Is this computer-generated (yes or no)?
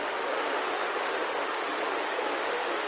yes